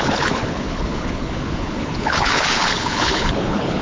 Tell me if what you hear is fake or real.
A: fake